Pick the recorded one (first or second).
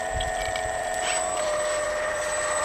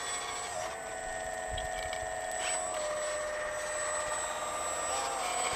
second